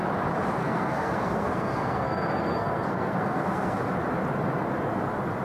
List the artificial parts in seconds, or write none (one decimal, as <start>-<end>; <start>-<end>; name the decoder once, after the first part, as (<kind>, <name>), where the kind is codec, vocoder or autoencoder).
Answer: 0.6-3.8 (codec, SNAC)